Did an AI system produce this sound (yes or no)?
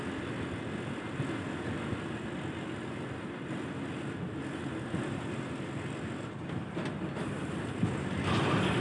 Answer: no